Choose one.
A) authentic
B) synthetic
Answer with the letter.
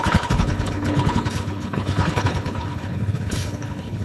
B